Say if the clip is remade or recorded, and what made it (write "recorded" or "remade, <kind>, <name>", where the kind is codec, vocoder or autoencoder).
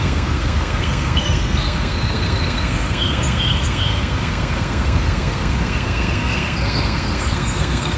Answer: remade, codec, SNAC